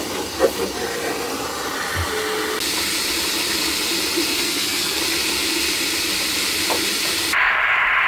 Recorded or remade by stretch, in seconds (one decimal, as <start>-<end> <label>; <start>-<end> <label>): 0.0-4.3 recorded; 4.3-5.0 remade; 5.0-8.1 recorded